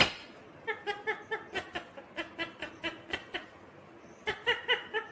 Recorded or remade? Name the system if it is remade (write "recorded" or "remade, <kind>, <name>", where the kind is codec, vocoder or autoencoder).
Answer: recorded